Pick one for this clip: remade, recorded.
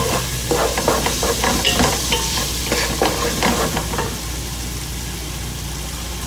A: recorded